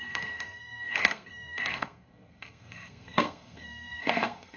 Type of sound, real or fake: fake